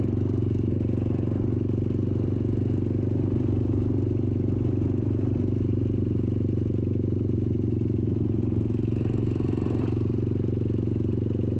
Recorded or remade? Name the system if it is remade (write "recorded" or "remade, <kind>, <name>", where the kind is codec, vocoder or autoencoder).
recorded